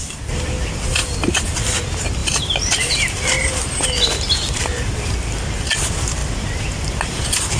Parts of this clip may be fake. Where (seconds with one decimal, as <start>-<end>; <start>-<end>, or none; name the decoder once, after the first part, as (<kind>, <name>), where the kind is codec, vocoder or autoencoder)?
1.0-1.6 (vocoder, BigVGAN v2); 2.2-3.5; 6.2-7.6